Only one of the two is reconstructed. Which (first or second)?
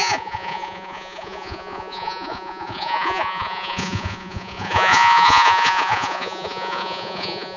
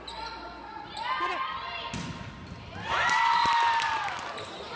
first